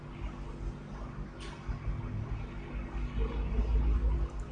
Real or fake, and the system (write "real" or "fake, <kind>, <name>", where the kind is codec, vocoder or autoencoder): real